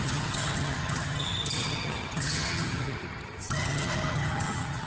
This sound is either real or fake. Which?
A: fake